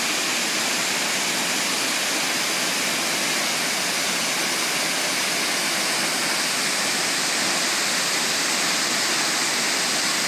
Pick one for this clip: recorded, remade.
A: recorded